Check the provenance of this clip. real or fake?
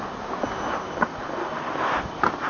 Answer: real